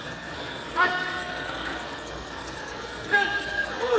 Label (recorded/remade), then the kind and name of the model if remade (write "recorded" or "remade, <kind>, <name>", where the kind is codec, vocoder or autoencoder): remade, codec, SNAC